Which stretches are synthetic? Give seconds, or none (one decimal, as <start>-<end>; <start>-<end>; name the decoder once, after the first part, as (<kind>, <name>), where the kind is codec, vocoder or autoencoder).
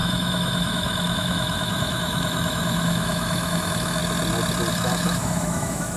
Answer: 0.0-4.0 (autoencoder, DAC-VAE); 4.7-6.0